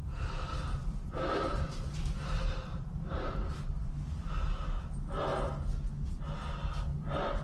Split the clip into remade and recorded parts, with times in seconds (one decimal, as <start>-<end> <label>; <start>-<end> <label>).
0.0-0.5 recorded; 0.5-4.3 remade; 4.3-7.4 recorded